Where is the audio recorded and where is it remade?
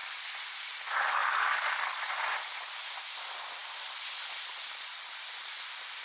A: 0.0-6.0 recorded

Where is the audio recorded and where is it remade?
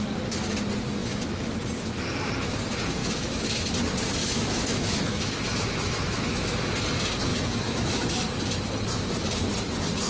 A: 0.0-1.0 recorded; 1.0-1.6 remade; 1.6-3.0 recorded; 3.0-3.7 remade; 3.7-4.2 recorded; 4.2-6.6 remade; 6.6-7.3 recorded; 7.3-8.1 remade; 8.1-10.1 recorded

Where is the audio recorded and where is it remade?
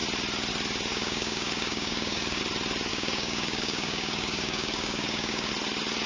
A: 0.0-0.9 recorded; 0.9-2.4 remade; 2.4-2.9 recorded; 2.9-5.5 remade; 5.5-6.1 recorded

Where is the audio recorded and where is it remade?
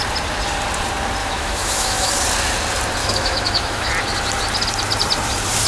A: 0.0-1.2 recorded; 1.2-2.1 remade; 2.1-3.0 recorded; 3.0-3.9 remade; 3.9-5.7 recorded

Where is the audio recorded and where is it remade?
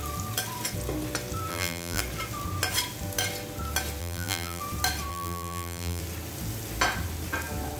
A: 0.0-1.5 recorded; 1.5-2.0 remade; 2.0-4.0 recorded; 4.0-4.6 remade; 4.6-5.1 recorded; 5.1-6.0 remade; 6.0-7.8 recorded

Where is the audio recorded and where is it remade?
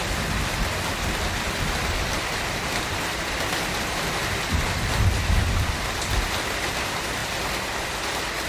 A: 0.0-8.5 remade